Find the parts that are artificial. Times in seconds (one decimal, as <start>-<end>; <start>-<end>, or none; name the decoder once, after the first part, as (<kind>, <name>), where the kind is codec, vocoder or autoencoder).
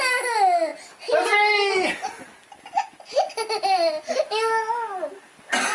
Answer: none